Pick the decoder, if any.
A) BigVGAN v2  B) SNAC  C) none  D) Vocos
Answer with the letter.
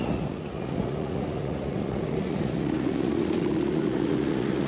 D